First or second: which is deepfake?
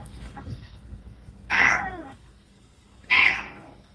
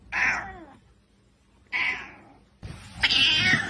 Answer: first